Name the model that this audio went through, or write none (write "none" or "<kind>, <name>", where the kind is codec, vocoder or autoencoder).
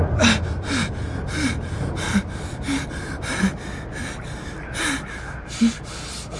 none